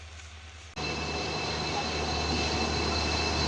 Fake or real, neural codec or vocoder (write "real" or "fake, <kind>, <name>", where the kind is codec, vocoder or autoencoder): real